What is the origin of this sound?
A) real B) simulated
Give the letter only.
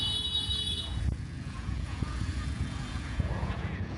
B